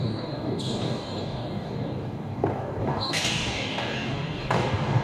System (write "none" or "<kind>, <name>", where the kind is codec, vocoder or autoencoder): codec, DAC